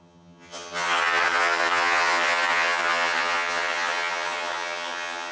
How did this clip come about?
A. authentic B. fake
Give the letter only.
B